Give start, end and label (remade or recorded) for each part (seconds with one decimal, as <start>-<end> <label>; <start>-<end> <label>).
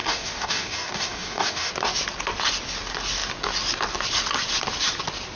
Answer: 0.0-1.7 remade; 1.7-5.4 recorded